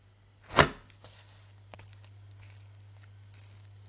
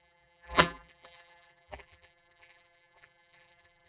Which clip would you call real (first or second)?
first